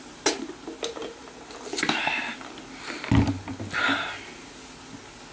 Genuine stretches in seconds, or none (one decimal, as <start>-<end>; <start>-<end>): 0.0-5.3